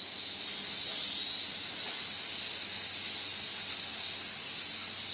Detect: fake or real real